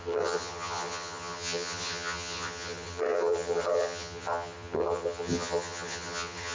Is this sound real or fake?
fake